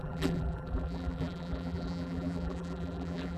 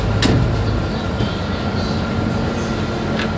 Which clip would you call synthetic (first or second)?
first